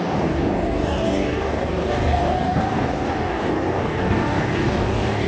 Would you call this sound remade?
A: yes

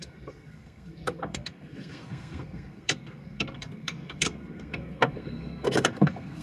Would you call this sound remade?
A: yes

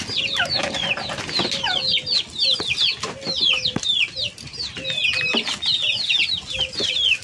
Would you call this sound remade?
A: no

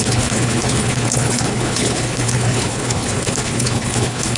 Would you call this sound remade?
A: yes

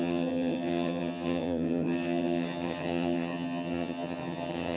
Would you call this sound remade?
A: yes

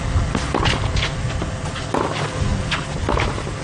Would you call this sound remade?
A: no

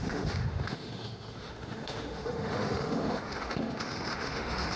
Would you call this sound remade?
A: yes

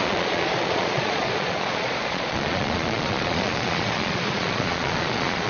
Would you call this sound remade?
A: yes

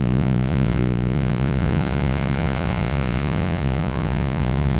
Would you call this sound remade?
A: yes